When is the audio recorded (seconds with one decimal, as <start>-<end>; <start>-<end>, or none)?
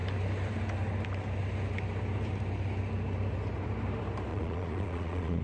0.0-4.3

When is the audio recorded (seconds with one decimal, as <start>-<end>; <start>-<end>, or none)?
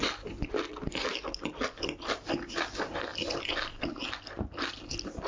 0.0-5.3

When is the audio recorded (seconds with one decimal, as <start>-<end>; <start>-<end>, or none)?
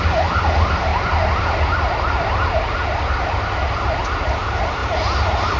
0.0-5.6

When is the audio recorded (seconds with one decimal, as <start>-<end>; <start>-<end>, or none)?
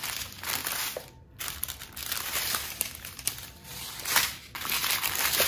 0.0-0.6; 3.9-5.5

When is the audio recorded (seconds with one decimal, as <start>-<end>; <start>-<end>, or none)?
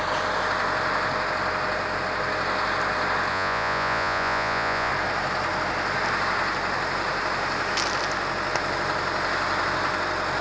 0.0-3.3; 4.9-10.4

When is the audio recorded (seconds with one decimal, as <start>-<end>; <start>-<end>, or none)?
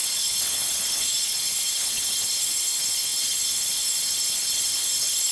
none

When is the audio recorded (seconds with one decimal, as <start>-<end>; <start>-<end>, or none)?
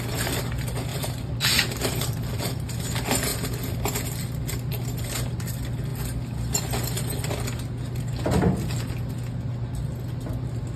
0.0-0.9; 2.4-10.8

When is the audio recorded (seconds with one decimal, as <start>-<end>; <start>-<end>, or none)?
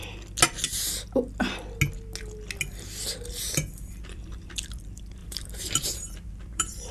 0.0-3.3